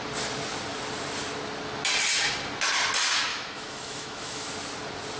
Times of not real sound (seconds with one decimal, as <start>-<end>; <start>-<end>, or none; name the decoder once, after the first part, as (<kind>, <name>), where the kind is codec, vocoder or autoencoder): 3.3-4.5 (autoencoder, DAC-VAE)